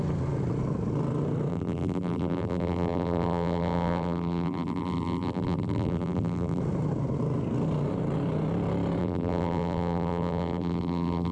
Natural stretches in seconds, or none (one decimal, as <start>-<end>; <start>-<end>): 0.0-1.5; 6.6-9.0